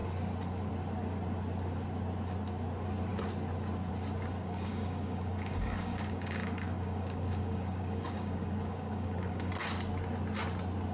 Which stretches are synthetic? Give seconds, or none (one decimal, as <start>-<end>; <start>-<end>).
4.4-9.5